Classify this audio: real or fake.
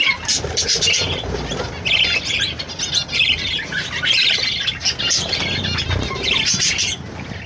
real